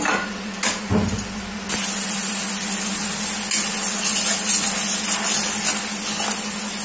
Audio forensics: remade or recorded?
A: recorded